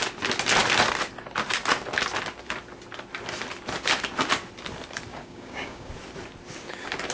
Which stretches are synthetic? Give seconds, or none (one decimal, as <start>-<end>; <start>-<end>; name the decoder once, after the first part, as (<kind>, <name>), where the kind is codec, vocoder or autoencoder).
5.1-5.9 (codec, DAC)